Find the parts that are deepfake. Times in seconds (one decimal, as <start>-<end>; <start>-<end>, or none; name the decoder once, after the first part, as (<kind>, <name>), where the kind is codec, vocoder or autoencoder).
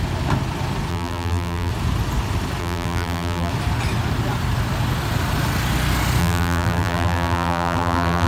0.9-1.7 (vocoder, BigVGAN v2); 2.6-3.5; 6.2-8.3